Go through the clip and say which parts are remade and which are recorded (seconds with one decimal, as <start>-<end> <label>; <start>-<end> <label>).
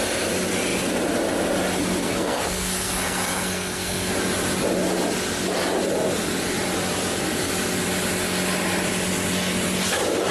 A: 0.0-2.0 recorded; 2.0-4.1 remade; 4.1-10.3 recorded